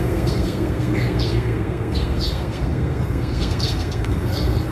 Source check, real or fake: fake